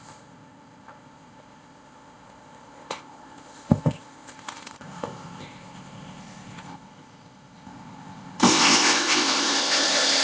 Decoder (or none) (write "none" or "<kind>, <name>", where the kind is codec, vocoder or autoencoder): codec, ZipCodec